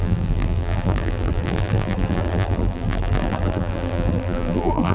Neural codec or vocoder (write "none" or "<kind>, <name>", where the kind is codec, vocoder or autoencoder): vocoder, BigVGAN v2